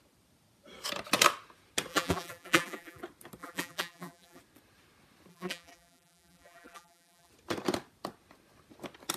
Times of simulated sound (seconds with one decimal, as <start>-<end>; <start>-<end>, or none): 1.9-3.0; 3.4-4.4; 5.3-7.3